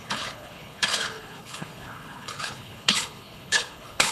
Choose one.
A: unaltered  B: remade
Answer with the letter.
B